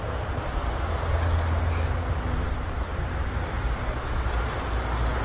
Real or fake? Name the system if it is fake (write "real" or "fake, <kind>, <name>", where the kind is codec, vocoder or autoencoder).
real